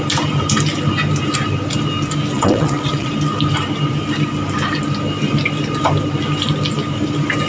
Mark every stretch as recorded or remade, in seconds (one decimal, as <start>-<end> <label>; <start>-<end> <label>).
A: 0.0-2.3 recorded; 2.3-3.1 remade; 3.1-7.5 recorded